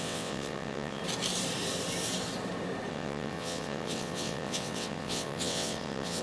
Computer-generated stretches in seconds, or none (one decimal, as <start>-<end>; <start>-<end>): 0.0-1.0; 2.9-6.2